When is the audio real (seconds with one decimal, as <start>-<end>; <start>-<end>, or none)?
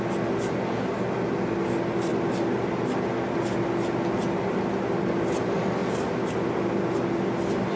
0.0-7.8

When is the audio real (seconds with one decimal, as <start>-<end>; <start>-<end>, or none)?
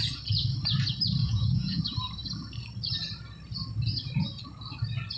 0.0-1.2; 1.8-5.2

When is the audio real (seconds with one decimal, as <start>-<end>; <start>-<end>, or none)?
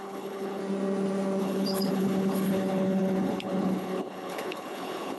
0.6-1.4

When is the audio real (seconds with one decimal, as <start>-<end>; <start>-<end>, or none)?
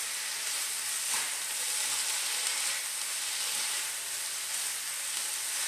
0.0-5.7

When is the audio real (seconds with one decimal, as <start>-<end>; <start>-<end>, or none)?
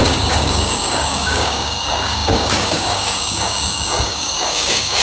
none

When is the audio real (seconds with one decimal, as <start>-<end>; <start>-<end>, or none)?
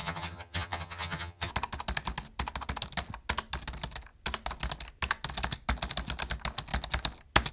1.5-7.5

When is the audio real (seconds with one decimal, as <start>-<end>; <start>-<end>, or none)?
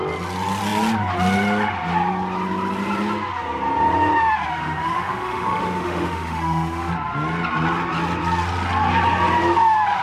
0.0-4.6; 6.9-10.0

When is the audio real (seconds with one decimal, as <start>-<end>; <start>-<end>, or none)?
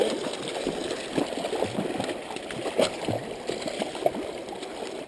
0.0-5.1